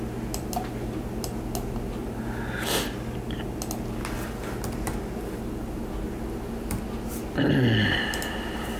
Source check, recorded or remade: recorded